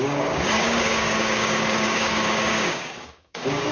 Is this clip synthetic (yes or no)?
yes